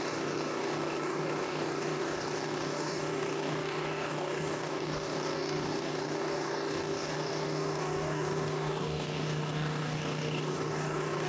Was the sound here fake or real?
fake